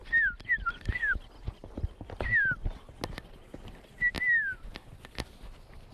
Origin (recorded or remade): recorded